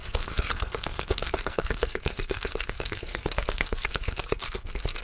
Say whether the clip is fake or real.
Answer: fake